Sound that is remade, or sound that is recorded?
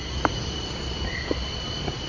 recorded